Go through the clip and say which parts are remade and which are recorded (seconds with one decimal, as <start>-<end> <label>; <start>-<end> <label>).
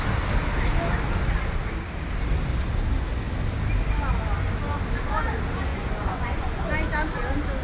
0.0-5.7 recorded; 5.7-6.6 remade; 6.6-7.6 recorded